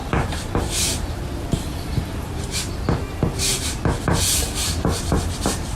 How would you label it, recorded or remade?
remade